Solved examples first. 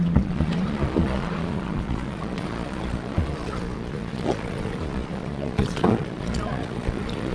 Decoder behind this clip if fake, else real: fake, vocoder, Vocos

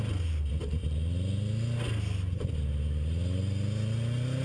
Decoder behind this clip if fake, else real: real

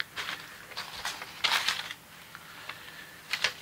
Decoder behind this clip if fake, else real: real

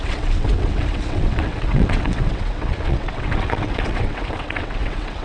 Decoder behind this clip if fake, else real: fake, vocoder, WaveNeXt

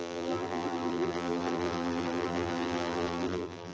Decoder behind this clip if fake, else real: fake, vocoder, BigVGAN v2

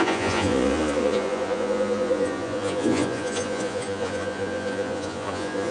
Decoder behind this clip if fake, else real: fake, vocoder, Vocos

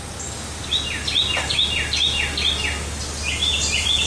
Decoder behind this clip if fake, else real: real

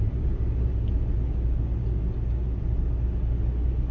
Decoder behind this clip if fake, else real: real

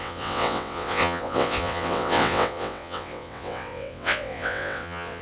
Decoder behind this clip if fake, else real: fake, vocoder, WaveNeXt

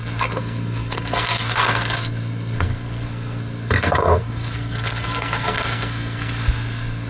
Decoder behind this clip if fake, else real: fake, codec, SNAC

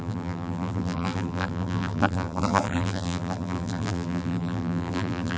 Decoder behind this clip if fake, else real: fake, vocoder, BigVGAN v2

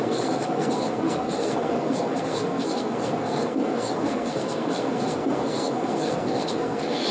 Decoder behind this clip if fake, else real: fake, codec, SNAC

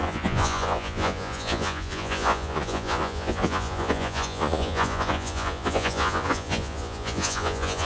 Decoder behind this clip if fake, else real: fake, vocoder, Vocos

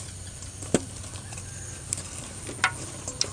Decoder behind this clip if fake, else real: real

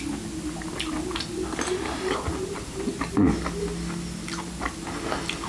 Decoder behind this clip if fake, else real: real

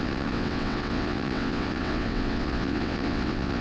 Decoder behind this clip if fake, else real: fake, vocoder, WaveNeXt